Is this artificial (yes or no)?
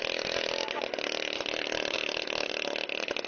no